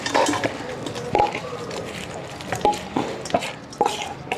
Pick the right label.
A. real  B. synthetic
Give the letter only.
A